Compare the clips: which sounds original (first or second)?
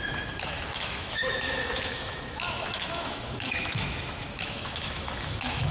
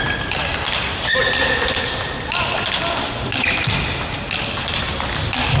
second